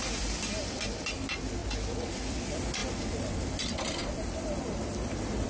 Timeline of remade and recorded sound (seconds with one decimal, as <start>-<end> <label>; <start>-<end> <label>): 0.0-1.6 remade; 1.6-2.3 recorded; 2.3-2.8 remade; 2.8-3.5 recorded; 3.5-5.5 remade